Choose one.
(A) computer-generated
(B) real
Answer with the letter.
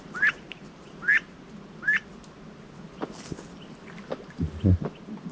B